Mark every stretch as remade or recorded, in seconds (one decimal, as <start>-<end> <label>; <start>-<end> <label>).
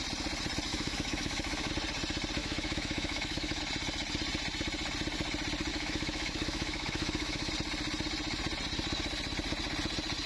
0.0-0.7 recorded; 0.7-1.7 remade; 1.7-2.4 recorded; 2.4-3.6 remade; 3.6-5.7 recorded; 5.7-7.5 remade; 7.5-10.3 recorded